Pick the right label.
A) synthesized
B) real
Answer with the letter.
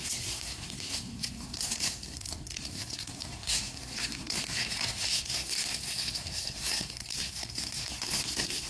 A